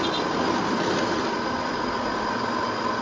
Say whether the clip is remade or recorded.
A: recorded